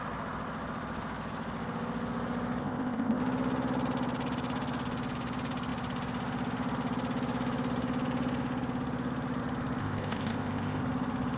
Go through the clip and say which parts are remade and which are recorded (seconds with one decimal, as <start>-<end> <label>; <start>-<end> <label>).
0.0-2.6 recorded; 2.6-3.2 remade; 3.2-9.8 recorded; 9.8-10.8 remade; 10.8-11.4 recorded